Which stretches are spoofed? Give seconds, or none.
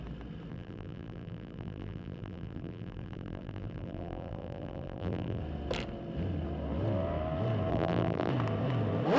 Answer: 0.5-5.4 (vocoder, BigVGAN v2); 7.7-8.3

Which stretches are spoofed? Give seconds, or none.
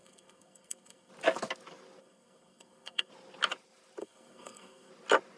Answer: 0.0-1.1 (codec, SNAC); 2.0-3.1; 4.0-4.9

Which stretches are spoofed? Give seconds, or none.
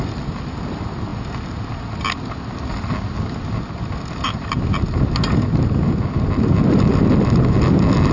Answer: none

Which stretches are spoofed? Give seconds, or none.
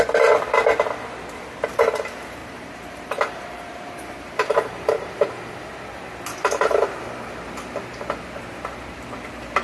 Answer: 2.4-5.1 (vocoder, BigVGAN v2)